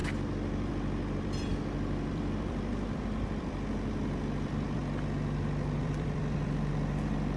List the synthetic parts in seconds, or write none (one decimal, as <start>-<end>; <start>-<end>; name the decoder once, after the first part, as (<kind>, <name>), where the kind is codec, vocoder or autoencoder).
0.0-4.8 (vocoder, BigVGAN v2); 5.8-7.4